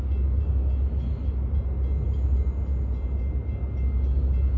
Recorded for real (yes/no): yes